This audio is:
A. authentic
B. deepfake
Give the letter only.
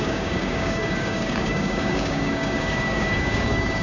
B